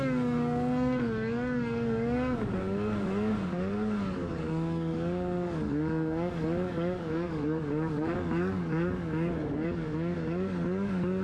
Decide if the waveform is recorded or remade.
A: remade